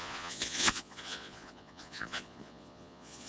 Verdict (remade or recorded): remade